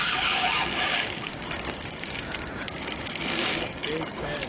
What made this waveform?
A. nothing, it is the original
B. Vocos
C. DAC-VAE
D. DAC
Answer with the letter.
D